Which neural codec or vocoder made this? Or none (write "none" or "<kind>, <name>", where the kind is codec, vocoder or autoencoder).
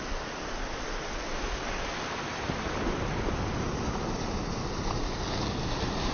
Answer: none